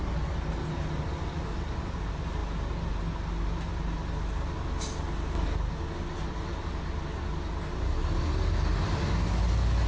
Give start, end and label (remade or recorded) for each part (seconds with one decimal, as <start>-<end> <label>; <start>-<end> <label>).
0.0-9.9 recorded